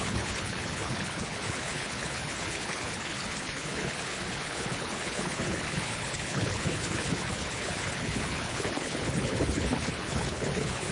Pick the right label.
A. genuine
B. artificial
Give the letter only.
B